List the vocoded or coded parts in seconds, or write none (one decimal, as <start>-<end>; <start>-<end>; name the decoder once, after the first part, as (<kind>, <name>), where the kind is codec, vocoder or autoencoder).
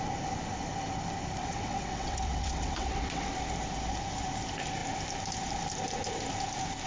1.4-3.3 (vocoder, WaveNeXt)